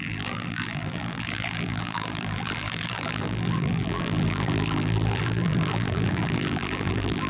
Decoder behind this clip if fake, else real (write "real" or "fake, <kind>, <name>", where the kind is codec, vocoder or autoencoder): fake, vocoder, BigVGAN v2